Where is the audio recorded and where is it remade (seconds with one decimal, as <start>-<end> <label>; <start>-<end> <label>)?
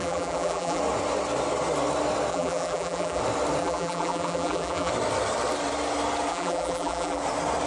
0.0-0.8 remade; 0.8-2.3 recorded; 2.3-3.2 remade; 3.2-3.6 recorded; 3.6-4.9 remade; 4.9-6.3 recorded; 6.3-7.2 remade; 7.2-7.7 recorded